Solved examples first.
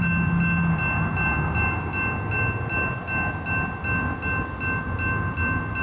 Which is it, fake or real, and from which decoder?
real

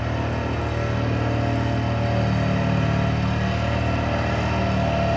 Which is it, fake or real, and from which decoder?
real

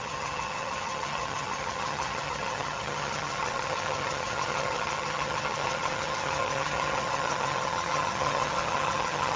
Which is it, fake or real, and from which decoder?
fake, vocoder, HiFi-GAN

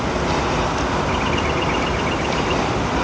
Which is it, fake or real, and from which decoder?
real